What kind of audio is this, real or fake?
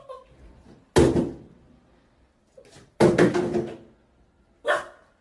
real